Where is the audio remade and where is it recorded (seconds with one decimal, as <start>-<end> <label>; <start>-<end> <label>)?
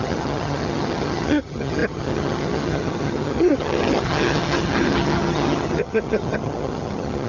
0.0-7.3 remade